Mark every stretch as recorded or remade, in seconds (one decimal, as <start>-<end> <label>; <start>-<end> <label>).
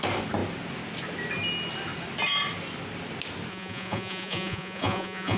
0.0-3.5 recorded; 3.5-5.4 remade